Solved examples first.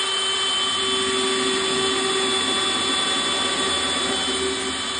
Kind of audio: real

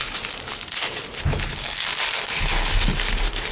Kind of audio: real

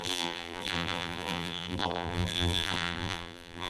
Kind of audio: fake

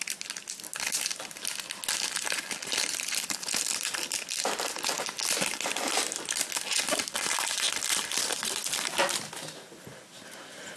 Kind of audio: real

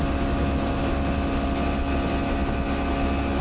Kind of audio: real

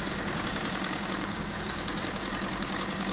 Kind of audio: fake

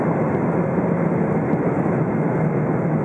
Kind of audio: real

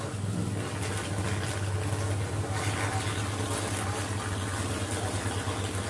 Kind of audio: real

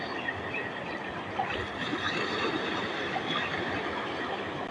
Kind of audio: real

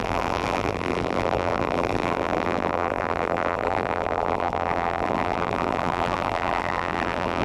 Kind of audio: fake